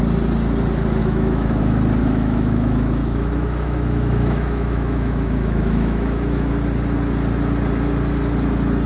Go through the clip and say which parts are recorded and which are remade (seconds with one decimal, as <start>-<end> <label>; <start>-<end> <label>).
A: 0.0-1.0 recorded; 1.0-1.6 remade; 1.6-2.0 recorded; 2.0-6.5 remade; 6.5-8.9 recorded

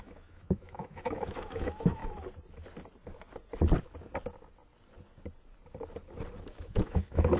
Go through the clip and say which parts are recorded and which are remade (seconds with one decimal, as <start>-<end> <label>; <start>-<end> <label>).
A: 0.0-2.0 remade; 2.0-6.4 recorded; 6.4-7.4 remade

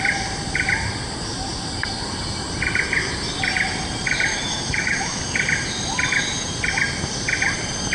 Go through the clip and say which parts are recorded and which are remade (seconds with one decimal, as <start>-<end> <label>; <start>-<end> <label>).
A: 0.0-4.3 recorded; 4.3-5.2 remade; 5.2-7.9 recorded